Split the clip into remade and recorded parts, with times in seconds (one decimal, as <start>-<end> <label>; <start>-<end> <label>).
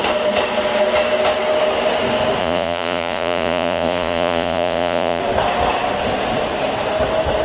0.0-2.4 recorded; 2.4-5.2 remade; 5.2-7.4 recorded